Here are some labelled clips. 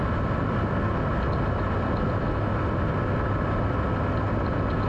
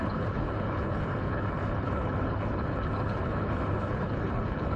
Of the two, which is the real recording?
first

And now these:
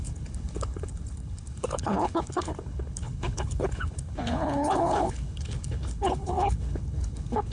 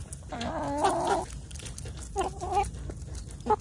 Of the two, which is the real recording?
second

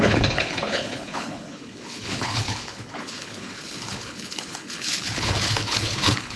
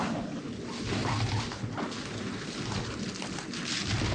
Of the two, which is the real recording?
second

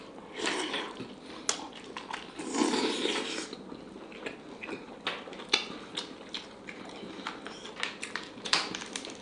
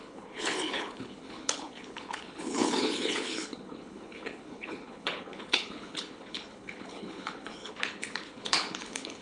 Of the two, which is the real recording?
first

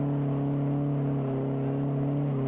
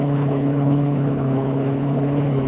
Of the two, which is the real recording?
first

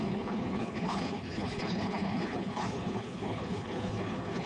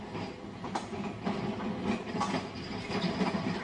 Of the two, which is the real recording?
second